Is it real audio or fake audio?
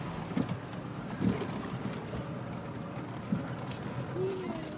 real